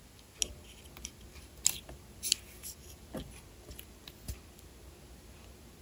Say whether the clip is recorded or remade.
recorded